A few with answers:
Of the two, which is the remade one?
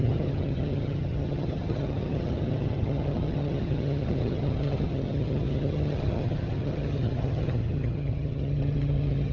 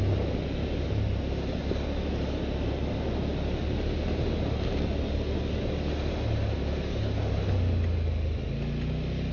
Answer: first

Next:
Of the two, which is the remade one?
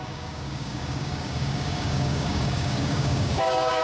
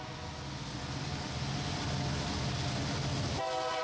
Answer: first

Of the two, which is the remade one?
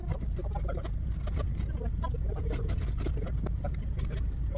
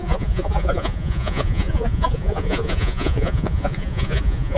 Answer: second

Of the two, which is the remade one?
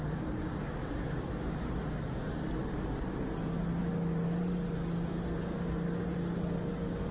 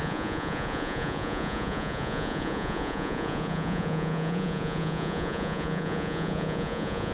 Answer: second